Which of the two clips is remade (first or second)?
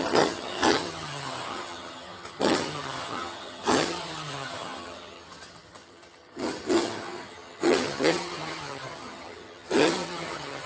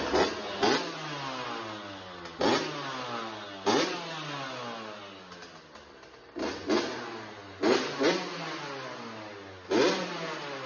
first